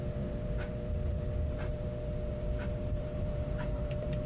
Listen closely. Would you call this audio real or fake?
fake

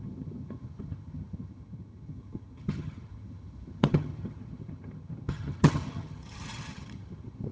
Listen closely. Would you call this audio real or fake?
fake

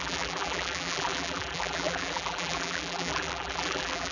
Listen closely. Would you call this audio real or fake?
fake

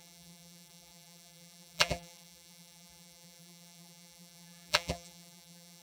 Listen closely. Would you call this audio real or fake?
fake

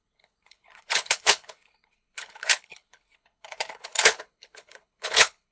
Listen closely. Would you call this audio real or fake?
fake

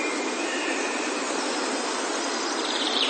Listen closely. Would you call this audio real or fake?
fake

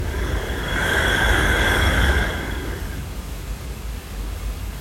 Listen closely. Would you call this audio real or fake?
fake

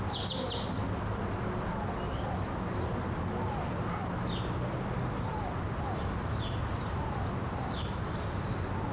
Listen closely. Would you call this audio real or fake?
real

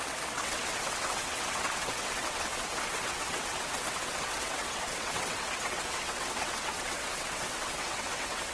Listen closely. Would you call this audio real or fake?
fake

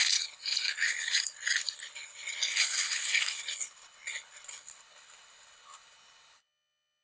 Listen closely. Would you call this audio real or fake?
fake